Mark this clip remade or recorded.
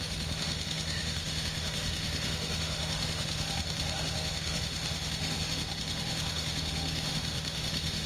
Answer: remade